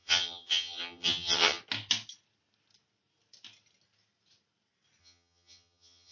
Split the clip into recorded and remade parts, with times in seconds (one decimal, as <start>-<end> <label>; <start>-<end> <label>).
0.0-1.6 remade; 1.6-5.0 recorded; 5.0-6.1 remade